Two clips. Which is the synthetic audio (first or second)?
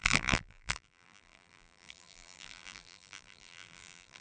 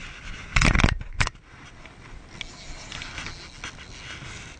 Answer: first